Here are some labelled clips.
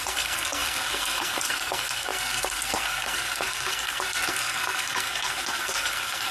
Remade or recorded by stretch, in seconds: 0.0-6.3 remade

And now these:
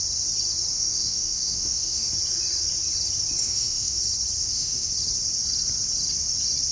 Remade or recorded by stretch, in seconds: 0.0-0.7 recorded; 0.7-2.1 remade; 2.1-3.4 recorded; 3.4-4.0 remade; 4.0-4.4 recorded; 4.4-4.9 remade; 4.9-6.7 recorded

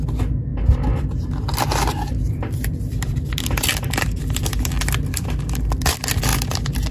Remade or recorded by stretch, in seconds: 0.0-6.9 recorded

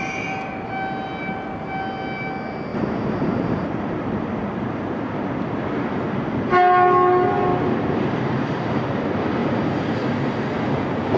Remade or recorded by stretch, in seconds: 0.0-2.7 recorded; 2.7-5.1 remade; 5.1-7.5 recorded; 7.5-8.5 remade; 8.5-11.2 recorded

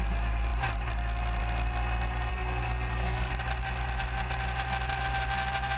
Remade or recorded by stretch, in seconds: 0.0-2.3 recorded; 2.3-3.3 remade; 3.3-5.8 recorded

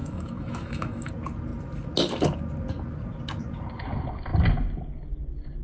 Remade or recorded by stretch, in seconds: 0.0-1.1 remade; 1.1-5.6 recorded